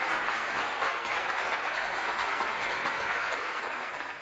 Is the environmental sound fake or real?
fake